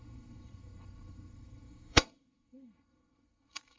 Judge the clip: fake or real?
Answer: fake